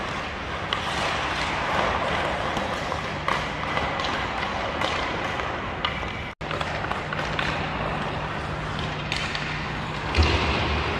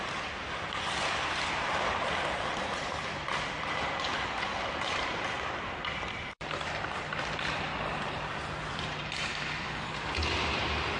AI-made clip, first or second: second